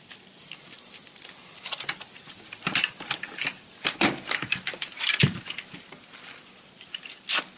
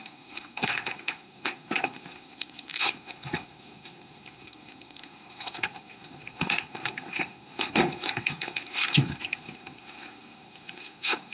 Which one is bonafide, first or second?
first